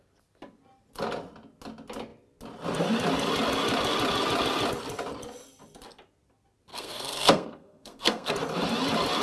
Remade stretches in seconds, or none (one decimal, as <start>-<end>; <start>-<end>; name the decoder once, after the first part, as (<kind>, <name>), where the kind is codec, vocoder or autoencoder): 6.7-8.3 (codec, SNAC)